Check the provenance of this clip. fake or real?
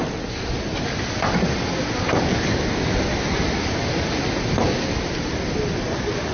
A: real